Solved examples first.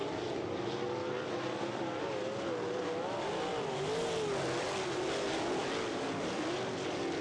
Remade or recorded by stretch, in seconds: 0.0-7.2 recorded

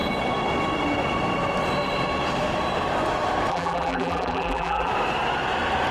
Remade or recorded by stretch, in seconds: 0.0-3.5 recorded; 3.5-4.9 remade; 4.9-5.9 recorded

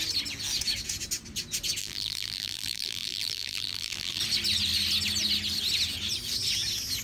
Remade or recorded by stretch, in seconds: 0.0-1.8 recorded; 1.8-4.2 remade; 4.2-7.0 recorded

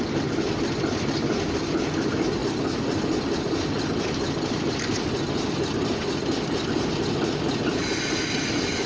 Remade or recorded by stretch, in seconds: 0.0-8.9 recorded

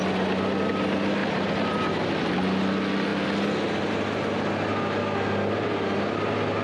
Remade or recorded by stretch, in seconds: 0.0-1.2 recorded; 1.2-2.1 remade; 2.1-6.6 recorded